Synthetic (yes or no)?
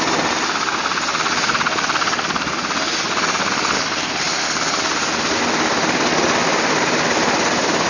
no